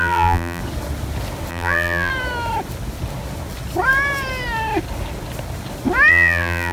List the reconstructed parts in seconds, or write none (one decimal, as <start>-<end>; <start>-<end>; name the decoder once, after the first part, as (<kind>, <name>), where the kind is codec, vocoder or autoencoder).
0.0-0.6 (vocoder, BigVGAN v2); 1.5-2.1; 6.1-6.7